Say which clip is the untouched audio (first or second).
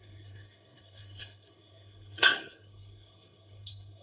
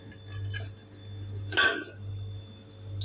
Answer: second